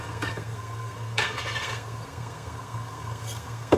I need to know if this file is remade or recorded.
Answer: remade